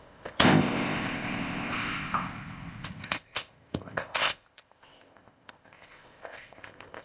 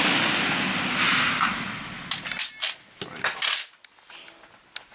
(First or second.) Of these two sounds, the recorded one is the second